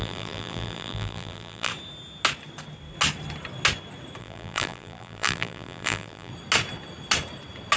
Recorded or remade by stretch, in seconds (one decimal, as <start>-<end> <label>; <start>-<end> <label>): 0.0-1.7 remade; 1.7-4.2 recorded; 4.2-6.3 remade; 6.3-7.8 recorded